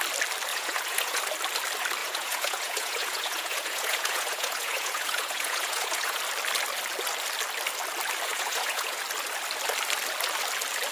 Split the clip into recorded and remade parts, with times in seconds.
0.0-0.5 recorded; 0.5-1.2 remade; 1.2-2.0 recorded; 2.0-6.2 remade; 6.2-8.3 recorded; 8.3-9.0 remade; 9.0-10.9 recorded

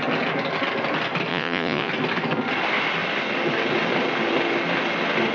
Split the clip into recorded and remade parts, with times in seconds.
0.0-1.3 recorded; 1.3-1.9 remade; 1.9-5.3 recorded